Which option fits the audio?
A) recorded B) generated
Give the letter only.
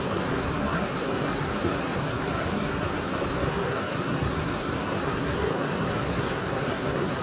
B